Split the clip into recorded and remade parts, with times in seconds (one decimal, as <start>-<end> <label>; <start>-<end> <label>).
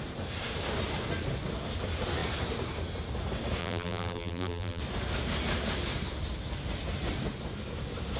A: 0.0-3.6 recorded; 3.6-4.8 remade; 4.8-8.2 recorded